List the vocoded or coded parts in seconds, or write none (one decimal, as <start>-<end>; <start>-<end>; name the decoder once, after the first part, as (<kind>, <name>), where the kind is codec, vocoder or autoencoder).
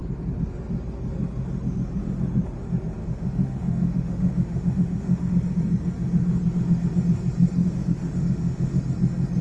3.0-5.2 (autoencoder, DAC-VAE); 7.6-8.8